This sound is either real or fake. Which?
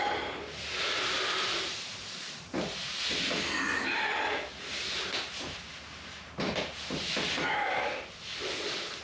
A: real